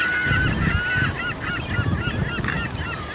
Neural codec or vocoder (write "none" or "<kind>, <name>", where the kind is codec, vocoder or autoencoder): none